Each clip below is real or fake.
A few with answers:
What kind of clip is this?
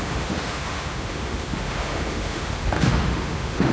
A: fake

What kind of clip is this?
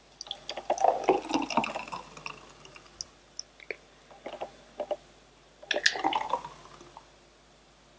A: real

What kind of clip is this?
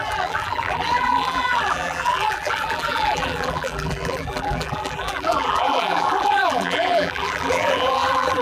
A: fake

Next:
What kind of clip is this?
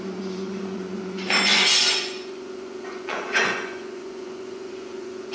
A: fake